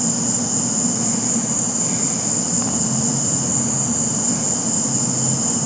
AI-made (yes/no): no